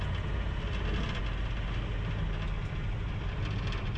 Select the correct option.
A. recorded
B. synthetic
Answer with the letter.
A